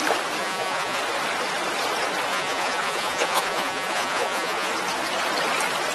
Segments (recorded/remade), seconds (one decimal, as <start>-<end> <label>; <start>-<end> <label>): 0.0-0.4 recorded; 0.4-1.0 remade; 1.0-2.3 recorded; 2.3-4.7 remade; 4.7-5.9 recorded